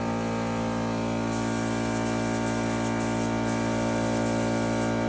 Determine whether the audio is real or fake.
real